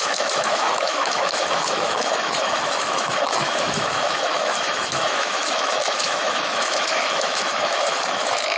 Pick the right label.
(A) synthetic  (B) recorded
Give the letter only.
A